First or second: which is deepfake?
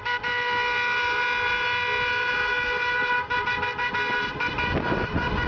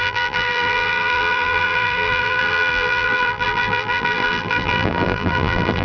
second